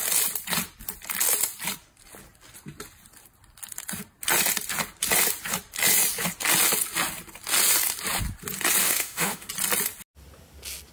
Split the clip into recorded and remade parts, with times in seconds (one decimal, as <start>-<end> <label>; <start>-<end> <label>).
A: 0.0-8.8 recorded; 8.8-9.5 remade; 9.5-10.9 recorded